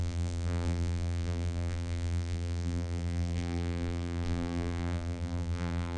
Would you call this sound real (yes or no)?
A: no